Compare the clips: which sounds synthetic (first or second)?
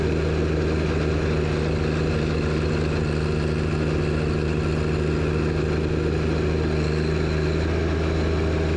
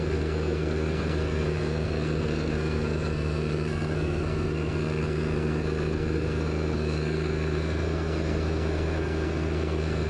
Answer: second